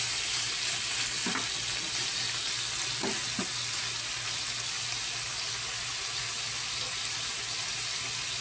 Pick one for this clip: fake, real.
real